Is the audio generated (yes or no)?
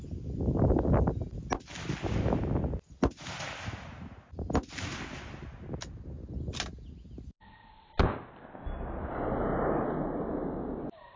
no